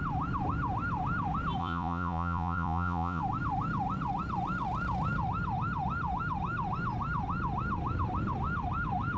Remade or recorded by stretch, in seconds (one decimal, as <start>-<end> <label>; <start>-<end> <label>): 0.0-1.6 recorded; 1.6-3.2 remade; 3.2-9.2 recorded